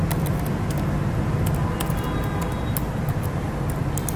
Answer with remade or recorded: recorded